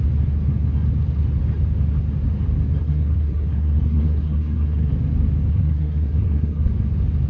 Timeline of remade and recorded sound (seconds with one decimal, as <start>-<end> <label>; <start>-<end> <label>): 0.0-2.8 recorded; 2.8-4.9 remade; 4.9-5.5 recorded; 5.5-6.7 remade; 6.7-7.3 recorded